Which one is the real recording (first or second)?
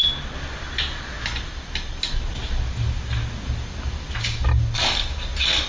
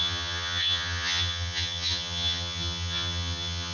first